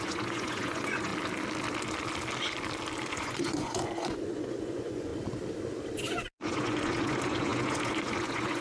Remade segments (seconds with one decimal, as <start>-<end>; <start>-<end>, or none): 0.0-1.1; 3.1-5.1; 6.1-8.6